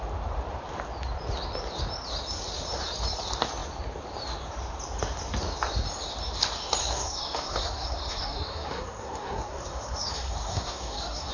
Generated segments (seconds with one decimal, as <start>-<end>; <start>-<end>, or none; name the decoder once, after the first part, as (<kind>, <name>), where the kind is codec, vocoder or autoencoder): 6.8-11.3 (codec, SNAC)